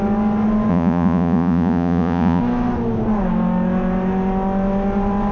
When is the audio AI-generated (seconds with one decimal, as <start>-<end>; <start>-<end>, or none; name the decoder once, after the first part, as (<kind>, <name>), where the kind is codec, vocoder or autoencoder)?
0.7-2.4 (vocoder, Vocos)

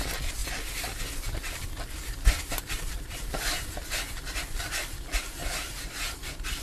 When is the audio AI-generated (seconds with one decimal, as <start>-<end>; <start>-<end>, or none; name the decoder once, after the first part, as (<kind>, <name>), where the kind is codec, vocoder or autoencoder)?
none